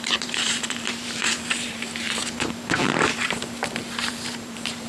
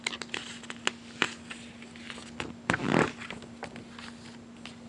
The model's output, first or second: first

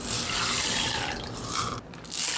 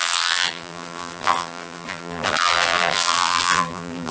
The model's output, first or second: second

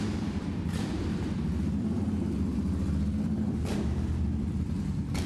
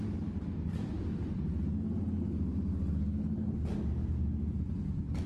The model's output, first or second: first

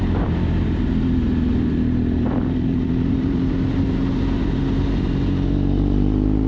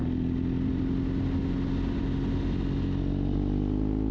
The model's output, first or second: first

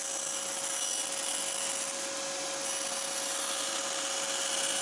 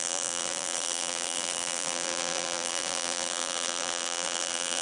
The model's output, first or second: second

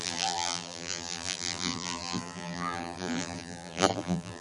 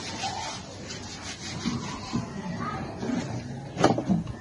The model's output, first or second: first